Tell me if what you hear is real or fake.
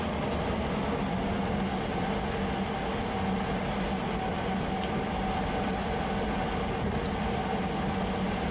real